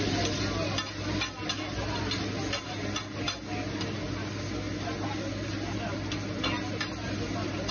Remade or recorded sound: recorded